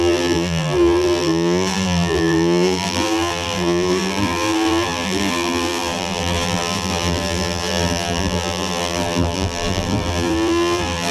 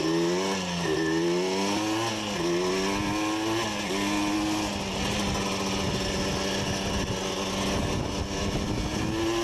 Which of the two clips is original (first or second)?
second